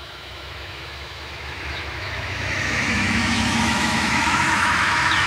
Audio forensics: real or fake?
fake